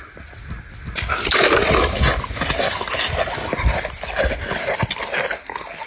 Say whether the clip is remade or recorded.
recorded